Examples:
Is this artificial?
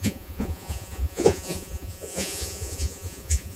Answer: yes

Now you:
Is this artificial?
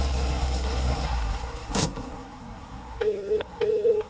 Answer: yes